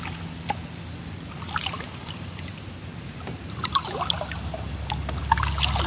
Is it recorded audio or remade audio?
recorded